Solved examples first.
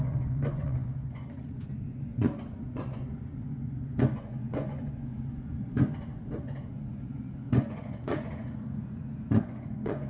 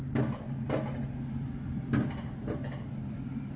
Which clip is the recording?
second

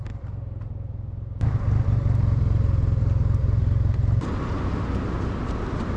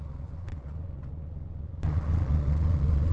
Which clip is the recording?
first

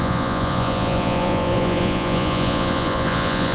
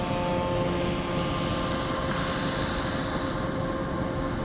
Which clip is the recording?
second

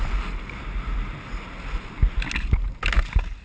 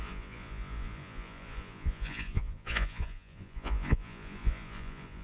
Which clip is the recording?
first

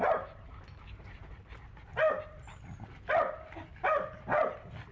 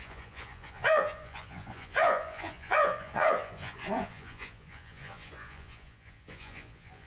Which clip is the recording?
first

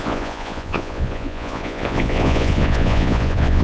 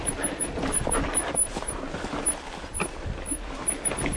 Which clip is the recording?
second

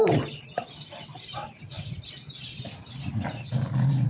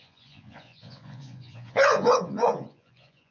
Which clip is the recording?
first